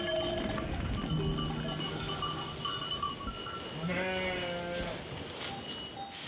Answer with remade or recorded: recorded